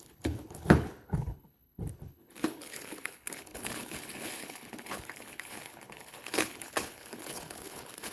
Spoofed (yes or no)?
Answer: yes